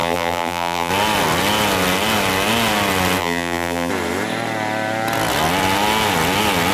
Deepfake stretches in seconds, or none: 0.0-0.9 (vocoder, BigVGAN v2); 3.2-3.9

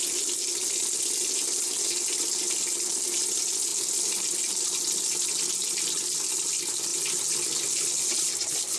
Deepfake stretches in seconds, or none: none

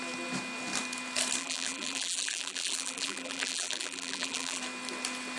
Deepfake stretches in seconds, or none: 1.4-4.6 (vocoder, BigVGAN v2)

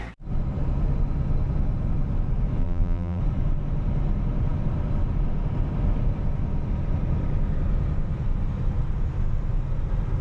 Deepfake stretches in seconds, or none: 2.6-3.2 (vocoder, BigVGAN v2)

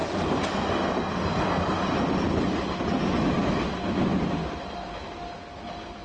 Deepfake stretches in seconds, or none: none

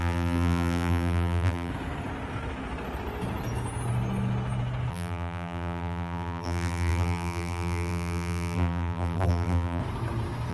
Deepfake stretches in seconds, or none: 0.0-1.7 (vocoder, BigVGAN v2); 4.9-9.8